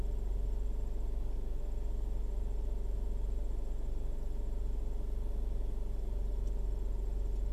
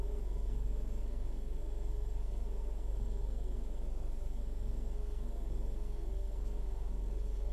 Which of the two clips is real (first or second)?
first